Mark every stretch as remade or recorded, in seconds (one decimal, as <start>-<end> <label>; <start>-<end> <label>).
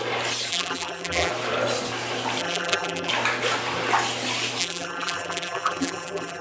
0.0-0.5 recorded; 0.5-1.3 remade; 1.3-2.4 recorded; 2.4-3.1 remade; 3.1-4.6 recorded; 4.6-6.4 remade